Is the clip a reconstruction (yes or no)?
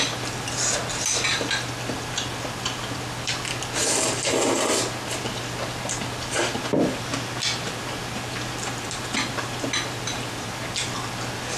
no